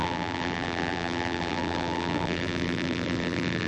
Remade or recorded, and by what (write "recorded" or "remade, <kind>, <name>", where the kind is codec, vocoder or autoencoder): remade, vocoder, BigVGAN v2